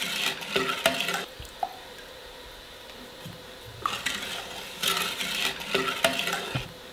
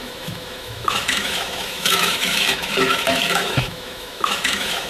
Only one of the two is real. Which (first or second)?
first